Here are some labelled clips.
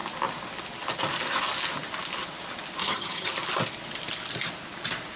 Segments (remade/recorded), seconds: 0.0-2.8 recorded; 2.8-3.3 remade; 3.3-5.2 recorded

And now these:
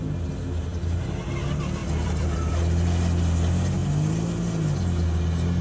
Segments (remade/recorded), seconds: 0.0-0.7 recorded; 0.7-1.2 remade; 1.2-1.8 recorded; 1.8-2.5 remade; 2.5-5.6 recorded

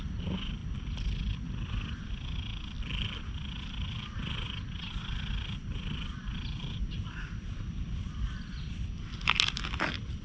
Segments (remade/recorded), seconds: 0.0-2.5 remade; 2.5-3.2 recorded; 3.2-10.2 remade

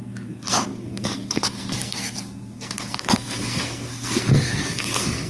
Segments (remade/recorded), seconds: 0.0-5.3 remade

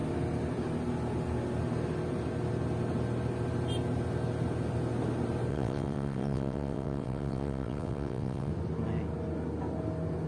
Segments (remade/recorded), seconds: 0.0-5.5 recorded; 5.5-8.5 remade; 8.5-10.3 recorded